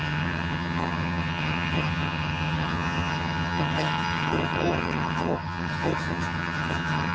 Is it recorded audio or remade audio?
remade